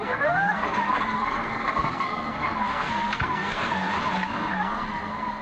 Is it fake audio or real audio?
fake